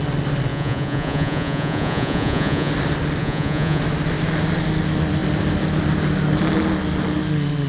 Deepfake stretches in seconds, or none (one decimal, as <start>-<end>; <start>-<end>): 0.5-2.7; 3.2-3.8